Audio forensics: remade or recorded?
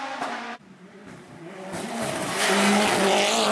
recorded